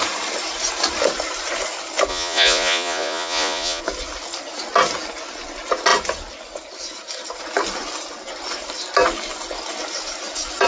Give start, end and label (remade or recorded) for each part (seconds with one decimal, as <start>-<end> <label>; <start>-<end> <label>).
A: 0.0-2.1 recorded; 2.1-3.8 remade; 3.8-10.7 recorded